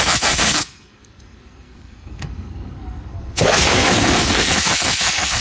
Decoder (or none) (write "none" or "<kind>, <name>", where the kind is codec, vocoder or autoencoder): codec, SNAC